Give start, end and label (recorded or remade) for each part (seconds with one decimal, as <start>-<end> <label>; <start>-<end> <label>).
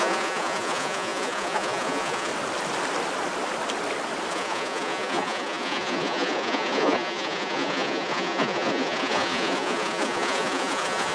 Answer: 0.0-2.3 remade; 2.3-4.3 recorded; 4.3-11.1 remade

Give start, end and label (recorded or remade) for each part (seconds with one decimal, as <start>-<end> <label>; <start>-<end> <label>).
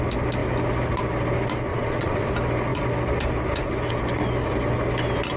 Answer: 0.0-1.7 recorded; 1.7-2.3 remade; 2.3-5.4 recorded